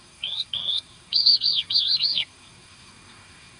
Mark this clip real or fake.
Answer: fake